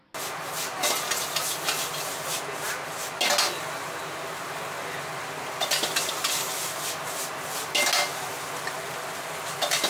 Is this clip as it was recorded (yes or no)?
yes